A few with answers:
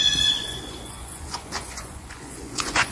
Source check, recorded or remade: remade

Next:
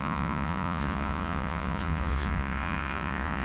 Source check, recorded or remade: remade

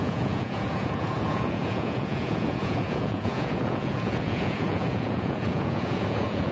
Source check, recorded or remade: remade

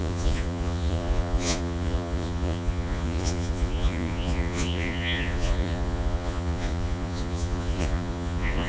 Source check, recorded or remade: remade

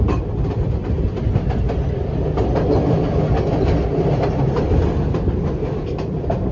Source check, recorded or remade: recorded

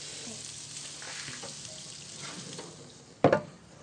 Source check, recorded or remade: recorded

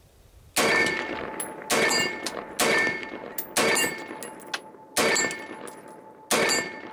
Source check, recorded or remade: recorded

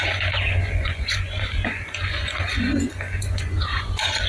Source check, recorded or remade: remade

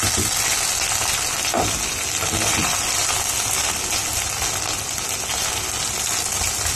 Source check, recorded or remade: recorded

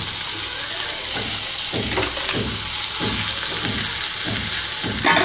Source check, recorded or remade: recorded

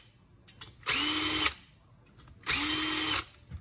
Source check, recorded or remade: recorded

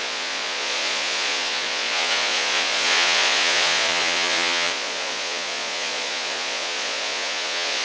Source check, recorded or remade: remade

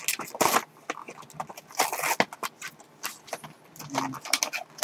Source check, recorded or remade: recorded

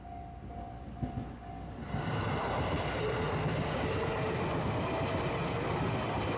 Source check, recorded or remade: recorded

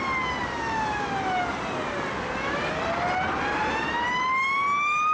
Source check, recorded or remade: recorded